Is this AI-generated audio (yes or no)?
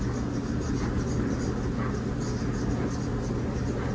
no